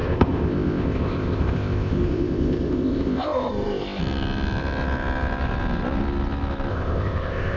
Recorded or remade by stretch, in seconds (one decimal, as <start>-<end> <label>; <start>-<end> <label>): 0.0-4.0 remade; 4.0-6.7 recorded; 6.7-7.6 remade